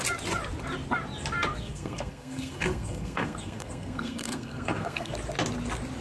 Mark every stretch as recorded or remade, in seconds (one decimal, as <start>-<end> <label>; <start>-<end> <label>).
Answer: 0.0-1.5 recorded; 1.5-5.1 remade; 5.1-6.0 recorded